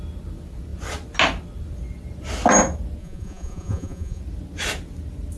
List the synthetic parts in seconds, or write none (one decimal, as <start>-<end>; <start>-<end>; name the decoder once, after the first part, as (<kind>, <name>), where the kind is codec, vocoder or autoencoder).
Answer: 3.0-4.2 (vocoder, Vocos)